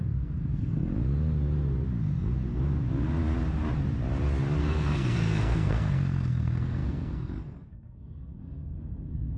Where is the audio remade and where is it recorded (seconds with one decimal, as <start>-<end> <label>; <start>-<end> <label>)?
0.0-0.9 remade; 0.9-4.6 recorded; 4.6-9.4 remade